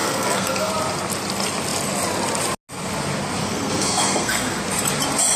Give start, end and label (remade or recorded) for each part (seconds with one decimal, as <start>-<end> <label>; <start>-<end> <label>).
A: 0.0-0.7 remade; 0.7-3.4 recorded; 3.4-4.6 remade; 4.6-5.4 recorded